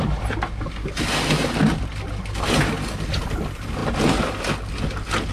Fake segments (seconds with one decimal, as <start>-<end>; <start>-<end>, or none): none